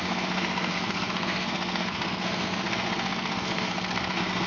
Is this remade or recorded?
remade